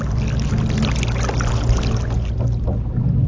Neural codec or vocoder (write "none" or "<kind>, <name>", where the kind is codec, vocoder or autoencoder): none